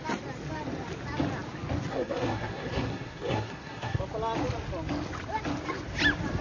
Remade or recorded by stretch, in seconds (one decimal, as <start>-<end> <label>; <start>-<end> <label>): 0.0-1.9 recorded; 1.9-4.0 remade; 4.0-6.4 recorded